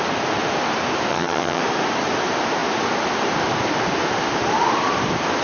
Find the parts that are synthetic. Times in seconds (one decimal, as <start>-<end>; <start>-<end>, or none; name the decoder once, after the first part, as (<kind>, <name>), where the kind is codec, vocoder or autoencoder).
1.1-1.6 (vocoder, HiFi-GAN)